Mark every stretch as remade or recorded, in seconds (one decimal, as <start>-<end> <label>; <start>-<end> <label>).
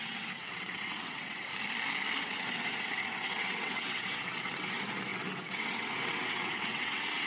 0.0-1.5 remade; 1.5-2.2 recorded; 2.2-7.3 remade